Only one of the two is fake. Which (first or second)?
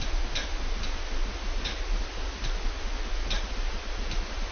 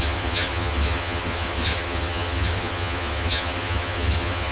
second